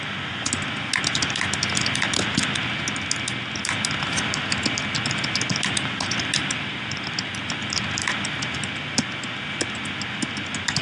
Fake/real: real